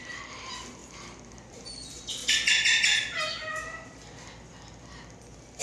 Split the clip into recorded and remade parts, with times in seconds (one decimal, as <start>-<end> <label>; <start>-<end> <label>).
0.0-0.8 remade; 0.8-1.5 recorded; 1.5-2.2 remade; 2.2-5.6 recorded